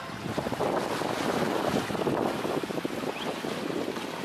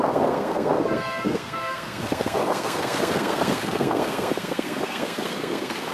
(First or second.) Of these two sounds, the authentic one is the first